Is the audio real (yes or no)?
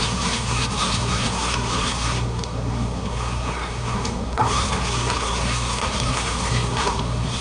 no